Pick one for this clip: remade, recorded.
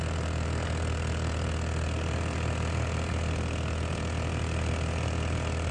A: remade